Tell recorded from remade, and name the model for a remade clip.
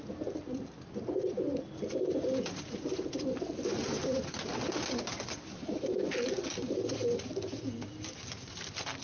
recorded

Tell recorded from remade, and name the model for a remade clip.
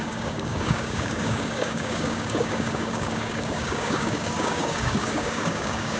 remade, codec, DAC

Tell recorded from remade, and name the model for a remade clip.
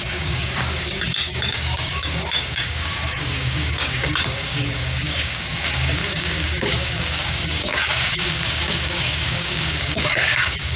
remade, codec, DAC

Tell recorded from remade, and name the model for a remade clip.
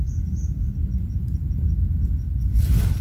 recorded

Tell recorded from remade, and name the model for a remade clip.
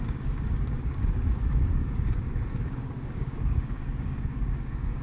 remade, codec, DAC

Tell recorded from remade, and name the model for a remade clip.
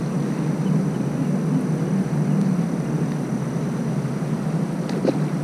recorded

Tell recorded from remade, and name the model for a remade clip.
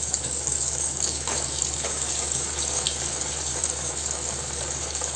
remade, codec, DAC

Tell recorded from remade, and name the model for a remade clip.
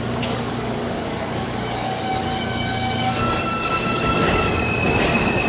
remade, codec, DAC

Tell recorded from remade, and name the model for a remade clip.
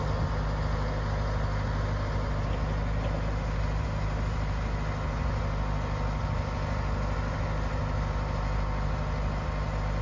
recorded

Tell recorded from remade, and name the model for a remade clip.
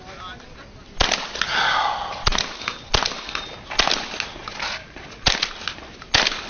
recorded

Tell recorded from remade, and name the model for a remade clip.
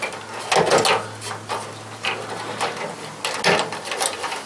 recorded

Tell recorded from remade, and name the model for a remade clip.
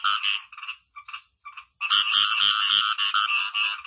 recorded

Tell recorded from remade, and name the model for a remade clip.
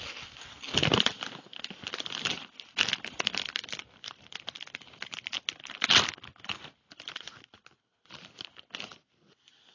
recorded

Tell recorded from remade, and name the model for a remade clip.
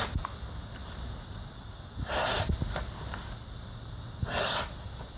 recorded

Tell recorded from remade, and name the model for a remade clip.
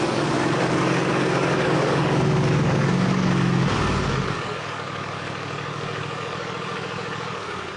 remade, codec, DAC